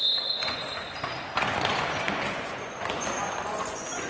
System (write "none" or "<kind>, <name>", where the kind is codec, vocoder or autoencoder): vocoder, Vocos